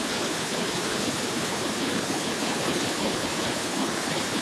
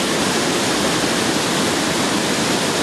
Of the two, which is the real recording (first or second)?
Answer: second